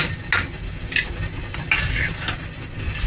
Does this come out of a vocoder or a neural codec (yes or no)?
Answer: no